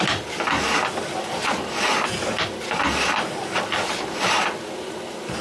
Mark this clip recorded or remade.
recorded